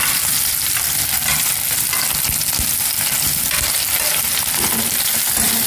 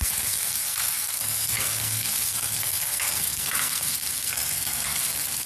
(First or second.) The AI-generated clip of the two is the second